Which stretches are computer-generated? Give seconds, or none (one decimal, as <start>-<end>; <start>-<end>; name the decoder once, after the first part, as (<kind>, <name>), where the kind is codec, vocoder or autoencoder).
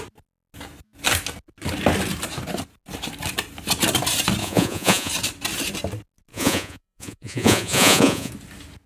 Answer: 4.4-5.1 (vocoder, Vocos); 6.3-8.3